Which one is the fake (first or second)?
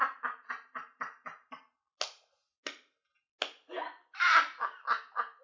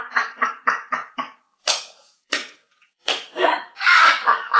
second